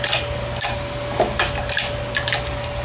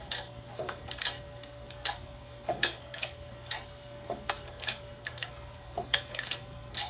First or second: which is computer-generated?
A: second